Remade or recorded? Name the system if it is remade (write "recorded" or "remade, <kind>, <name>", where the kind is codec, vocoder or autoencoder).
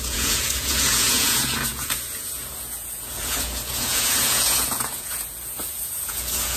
remade, vocoder, Vocos